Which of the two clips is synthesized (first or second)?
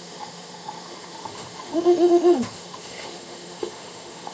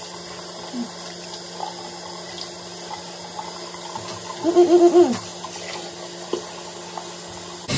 first